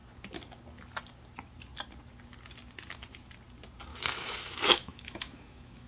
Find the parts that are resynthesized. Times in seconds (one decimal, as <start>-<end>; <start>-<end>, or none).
3.9-5.9